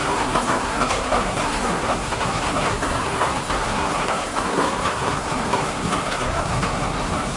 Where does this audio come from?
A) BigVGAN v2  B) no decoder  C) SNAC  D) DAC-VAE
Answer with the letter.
C